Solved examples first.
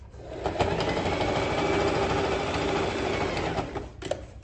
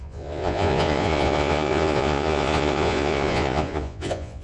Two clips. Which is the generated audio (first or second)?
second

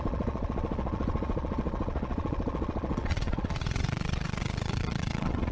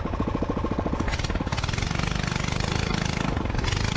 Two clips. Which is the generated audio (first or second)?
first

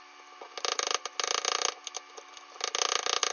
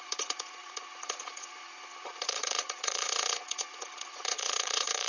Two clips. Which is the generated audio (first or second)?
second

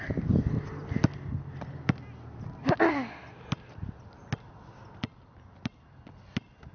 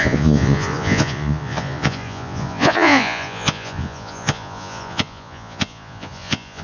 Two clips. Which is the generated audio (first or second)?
second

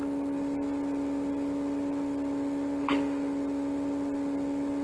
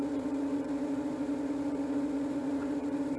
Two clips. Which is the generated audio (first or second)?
second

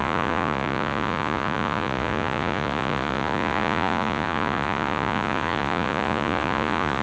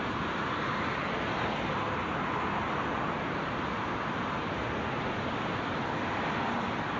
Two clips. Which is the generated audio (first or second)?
first